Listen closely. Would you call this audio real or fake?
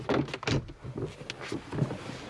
real